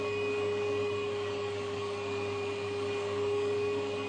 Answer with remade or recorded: remade